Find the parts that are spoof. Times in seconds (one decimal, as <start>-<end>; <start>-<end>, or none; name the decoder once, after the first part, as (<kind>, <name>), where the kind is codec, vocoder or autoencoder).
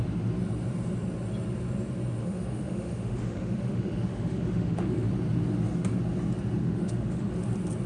2.2-5.1 (autoencoder, DAC-VAE); 6.6-7.3